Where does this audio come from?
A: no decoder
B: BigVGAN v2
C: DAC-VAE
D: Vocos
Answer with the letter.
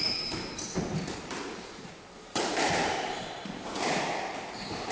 B